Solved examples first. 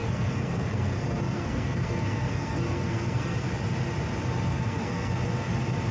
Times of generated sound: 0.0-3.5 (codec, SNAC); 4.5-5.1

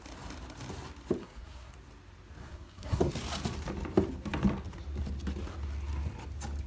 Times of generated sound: 1.2-1.7 (codec, SNAC); 2.4-3.1

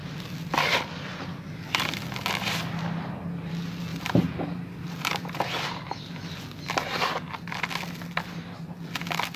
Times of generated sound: 3.9-5.4 (vocoder, BigVGAN v2)